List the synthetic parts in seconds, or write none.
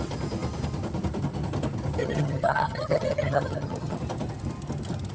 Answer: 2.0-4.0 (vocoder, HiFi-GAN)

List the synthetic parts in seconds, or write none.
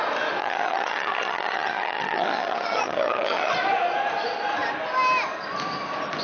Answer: 0.4-3.5 (vocoder, HiFi-GAN)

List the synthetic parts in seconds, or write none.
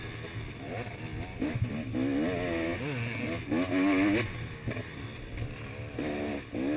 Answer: none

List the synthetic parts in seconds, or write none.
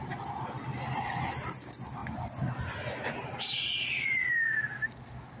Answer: none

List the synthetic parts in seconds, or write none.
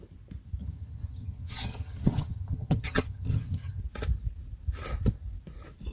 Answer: 0.6-3.8 (vocoder, HiFi-GAN)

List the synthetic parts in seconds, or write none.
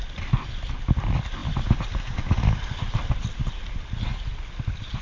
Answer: none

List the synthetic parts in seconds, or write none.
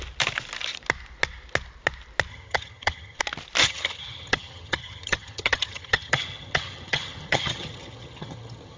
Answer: 2.3-3.2 (vocoder, HiFi-GAN); 3.6-8.8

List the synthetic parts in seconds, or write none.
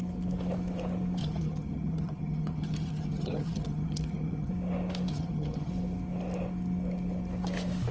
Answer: 1.2-4.5 (vocoder, HiFi-GAN); 5.1-5.7